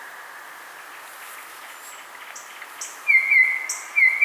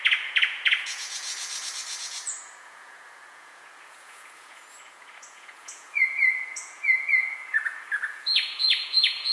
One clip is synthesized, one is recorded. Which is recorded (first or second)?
first